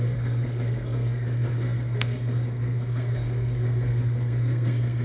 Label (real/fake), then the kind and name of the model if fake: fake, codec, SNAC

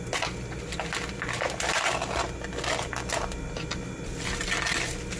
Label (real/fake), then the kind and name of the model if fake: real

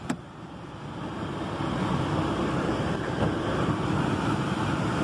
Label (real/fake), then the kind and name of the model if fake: real